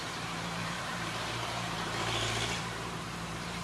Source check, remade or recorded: remade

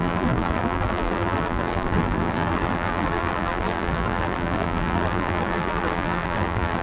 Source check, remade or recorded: remade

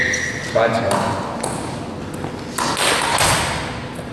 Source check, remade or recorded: recorded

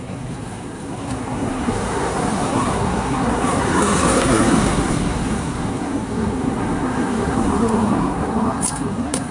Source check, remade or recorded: remade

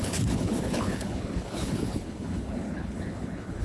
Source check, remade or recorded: remade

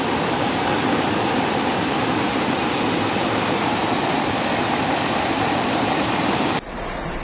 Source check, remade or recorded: remade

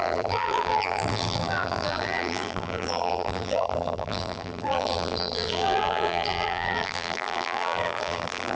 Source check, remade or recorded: remade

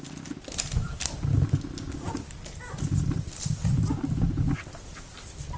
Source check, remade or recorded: recorded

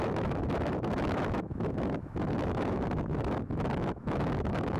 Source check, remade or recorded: remade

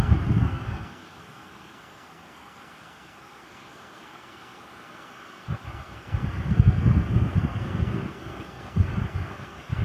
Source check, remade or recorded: remade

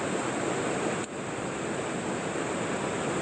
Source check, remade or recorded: recorded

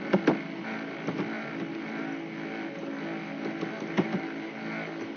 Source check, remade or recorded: recorded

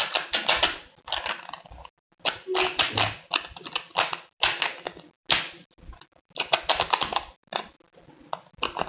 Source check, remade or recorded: recorded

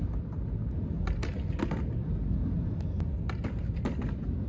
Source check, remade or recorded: recorded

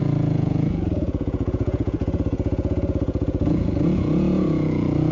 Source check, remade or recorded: remade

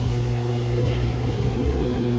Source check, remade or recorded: remade